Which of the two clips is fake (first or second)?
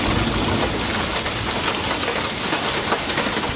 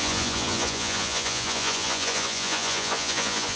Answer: second